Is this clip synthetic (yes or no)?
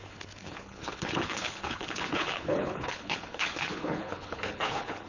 yes